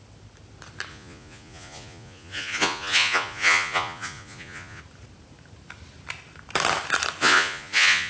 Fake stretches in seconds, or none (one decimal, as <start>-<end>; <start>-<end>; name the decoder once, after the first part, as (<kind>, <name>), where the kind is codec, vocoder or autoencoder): 0.9-4.8 (vocoder, Vocos); 7.2-8.1